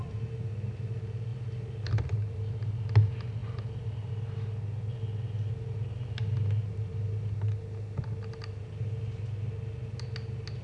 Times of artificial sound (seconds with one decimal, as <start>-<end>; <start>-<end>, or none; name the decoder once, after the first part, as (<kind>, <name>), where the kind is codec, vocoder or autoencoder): 1.3-2.5 (vocoder, BigVGAN v2); 3.4-4.1